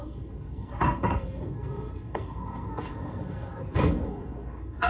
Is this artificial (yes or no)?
yes